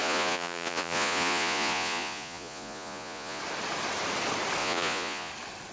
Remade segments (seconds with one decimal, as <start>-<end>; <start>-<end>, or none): 0.0-3.4; 4.6-5.3